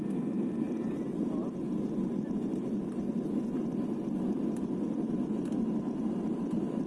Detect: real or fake real